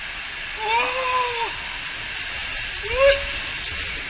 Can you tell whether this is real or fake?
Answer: real